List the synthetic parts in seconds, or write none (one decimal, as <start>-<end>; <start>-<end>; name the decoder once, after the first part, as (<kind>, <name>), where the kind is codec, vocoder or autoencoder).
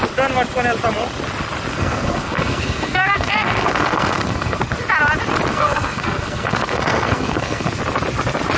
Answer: 1.7-4.6 (codec, SNAC); 5.5-7.8